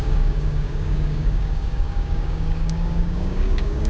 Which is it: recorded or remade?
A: remade